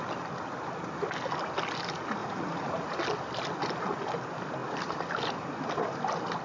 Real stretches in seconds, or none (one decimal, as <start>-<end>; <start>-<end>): 0.0-2.2; 3.0-6.4